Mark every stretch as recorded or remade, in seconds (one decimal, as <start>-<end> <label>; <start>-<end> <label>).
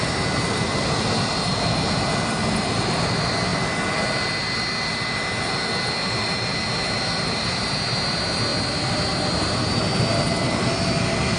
0.0-11.4 recorded